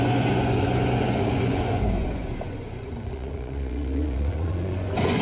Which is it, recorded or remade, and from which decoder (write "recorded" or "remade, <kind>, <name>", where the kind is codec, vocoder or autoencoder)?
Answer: remade, vocoder, Vocos